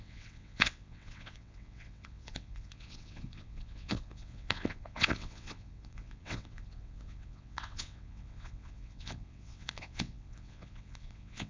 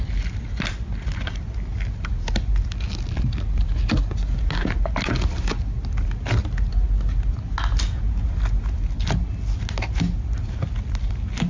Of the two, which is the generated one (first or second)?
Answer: first